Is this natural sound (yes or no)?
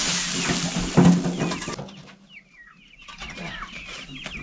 yes